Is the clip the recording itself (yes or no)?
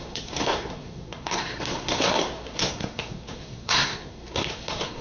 no